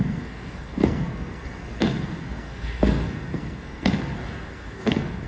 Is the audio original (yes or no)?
no